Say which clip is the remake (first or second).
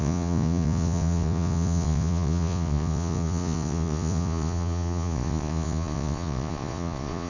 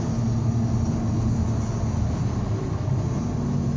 first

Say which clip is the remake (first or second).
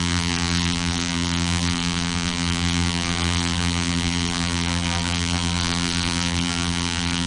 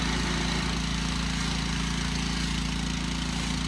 first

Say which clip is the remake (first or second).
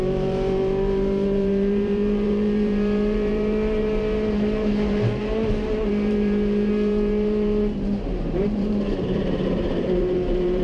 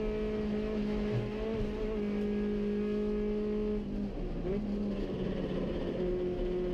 first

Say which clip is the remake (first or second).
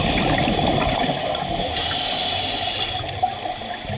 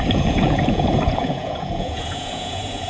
second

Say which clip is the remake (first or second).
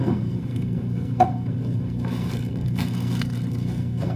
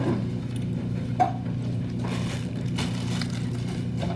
first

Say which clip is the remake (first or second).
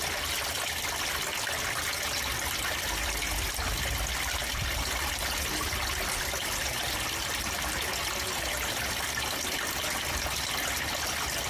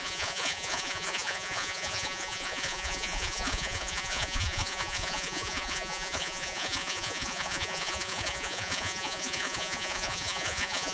second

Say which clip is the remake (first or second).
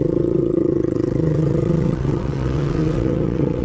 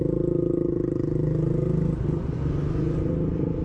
first